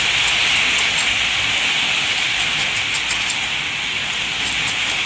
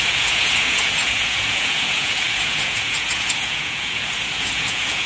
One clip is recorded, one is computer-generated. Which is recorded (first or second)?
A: first